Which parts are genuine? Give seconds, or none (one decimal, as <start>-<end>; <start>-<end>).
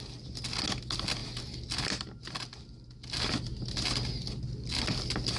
0.0-5.4